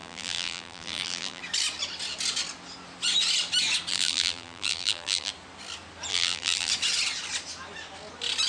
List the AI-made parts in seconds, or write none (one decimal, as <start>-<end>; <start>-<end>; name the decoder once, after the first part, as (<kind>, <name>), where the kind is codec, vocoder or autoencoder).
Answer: 0.0-1.4 (vocoder, BigVGAN v2); 3.9-5.3; 6.1-6.7